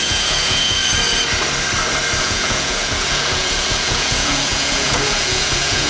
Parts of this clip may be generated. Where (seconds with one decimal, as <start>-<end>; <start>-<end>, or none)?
0.0-0.8; 2.2-5.9